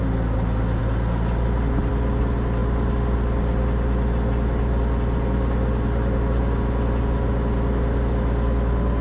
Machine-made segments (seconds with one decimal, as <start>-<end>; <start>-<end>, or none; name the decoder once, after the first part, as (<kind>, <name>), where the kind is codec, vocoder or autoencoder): none